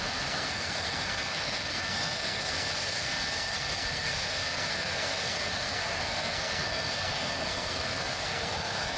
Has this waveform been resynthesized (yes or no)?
yes